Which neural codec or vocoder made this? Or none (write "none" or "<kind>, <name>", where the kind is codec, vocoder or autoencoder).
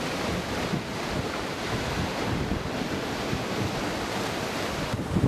none